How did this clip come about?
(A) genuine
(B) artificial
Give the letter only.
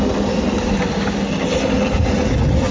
A